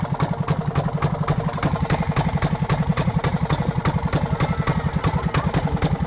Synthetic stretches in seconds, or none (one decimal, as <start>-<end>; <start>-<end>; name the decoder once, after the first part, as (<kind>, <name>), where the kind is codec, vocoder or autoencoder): 2.9-3.8 (vocoder, Vocos)